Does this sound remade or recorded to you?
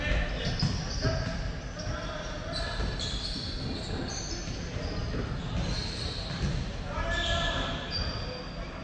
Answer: recorded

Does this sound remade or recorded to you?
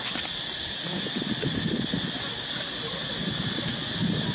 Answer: recorded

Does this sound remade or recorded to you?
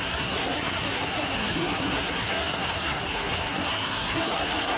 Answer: remade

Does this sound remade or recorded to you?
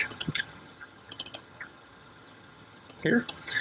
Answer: remade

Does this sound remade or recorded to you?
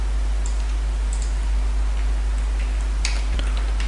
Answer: recorded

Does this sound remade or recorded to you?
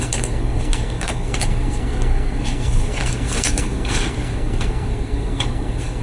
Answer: remade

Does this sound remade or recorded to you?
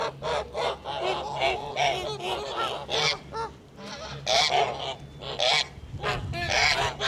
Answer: recorded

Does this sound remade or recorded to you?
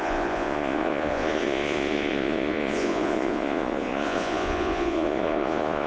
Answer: remade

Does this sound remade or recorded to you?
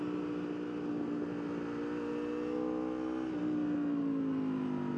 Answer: recorded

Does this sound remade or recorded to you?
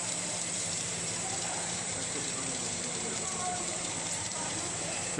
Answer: remade